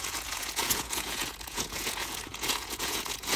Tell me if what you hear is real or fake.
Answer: fake